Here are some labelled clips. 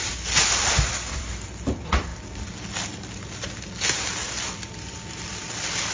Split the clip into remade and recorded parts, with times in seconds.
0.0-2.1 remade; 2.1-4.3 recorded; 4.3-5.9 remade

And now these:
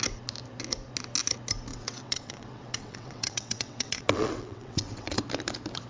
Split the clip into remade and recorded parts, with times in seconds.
0.0-1.7 recorded; 1.7-5.2 remade; 5.2-5.9 recorded

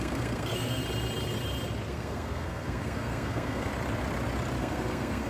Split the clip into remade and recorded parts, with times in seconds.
0.0-0.8 remade; 0.8-1.9 recorded; 1.9-3.7 remade; 3.7-4.6 recorded; 4.6-5.3 remade

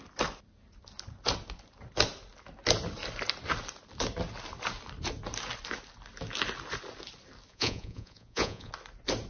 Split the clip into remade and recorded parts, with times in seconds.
0.0-7.5 recorded; 7.5-8.7 remade; 8.7-9.3 recorded

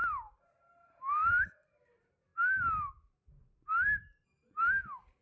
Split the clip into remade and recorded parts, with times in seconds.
0.0-0.7 recorded; 0.7-5.2 remade

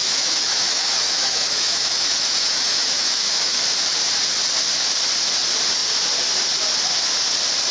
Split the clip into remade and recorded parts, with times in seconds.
0.0-3.6 remade; 3.6-7.7 recorded

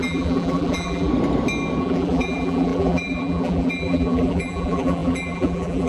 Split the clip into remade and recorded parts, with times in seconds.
0.0-1.1 remade; 1.1-1.8 recorded; 1.8-5.9 remade